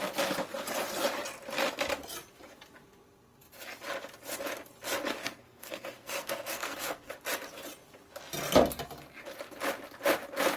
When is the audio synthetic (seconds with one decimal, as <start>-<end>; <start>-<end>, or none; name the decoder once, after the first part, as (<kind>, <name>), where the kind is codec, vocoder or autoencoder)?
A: 5.2-7.1 (codec, SNAC)